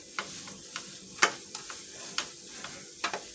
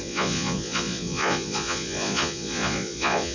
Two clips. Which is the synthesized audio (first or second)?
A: second